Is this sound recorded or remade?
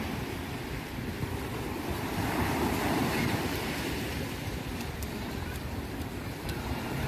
remade